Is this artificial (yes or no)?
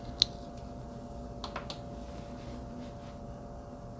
no